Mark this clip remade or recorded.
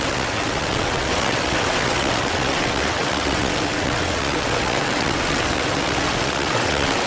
remade